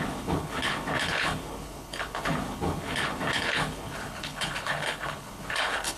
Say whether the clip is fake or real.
fake